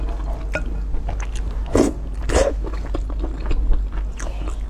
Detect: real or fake real